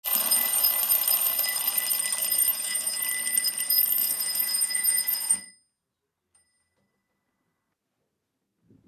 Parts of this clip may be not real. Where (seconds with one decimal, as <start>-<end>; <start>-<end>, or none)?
2.5-3.0; 4.0-5.5